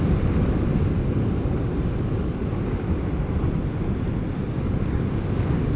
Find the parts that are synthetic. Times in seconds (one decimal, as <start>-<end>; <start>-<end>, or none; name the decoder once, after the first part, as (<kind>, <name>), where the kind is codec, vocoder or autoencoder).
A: 0.7-2.8 (codec, DAC); 4.4-5.8